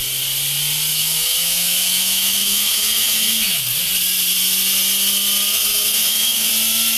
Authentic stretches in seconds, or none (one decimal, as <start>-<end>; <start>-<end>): 0.0-0.9; 3.6-5.5; 6.5-7.0

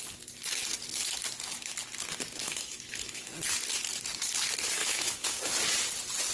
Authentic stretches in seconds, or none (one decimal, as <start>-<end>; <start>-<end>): 0.0-2.4; 3.3-4.8; 5.5-6.3

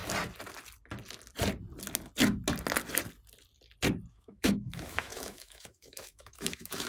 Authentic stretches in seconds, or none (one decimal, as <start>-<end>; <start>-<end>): 0.0-4.1